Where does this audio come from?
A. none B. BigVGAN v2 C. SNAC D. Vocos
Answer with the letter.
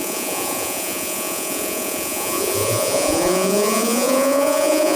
D